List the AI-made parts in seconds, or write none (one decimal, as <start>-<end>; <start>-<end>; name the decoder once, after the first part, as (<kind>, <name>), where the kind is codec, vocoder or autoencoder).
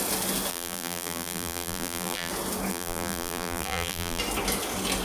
0.5-2.3 (vocoder, BigVGAN v2); 2.7-4.2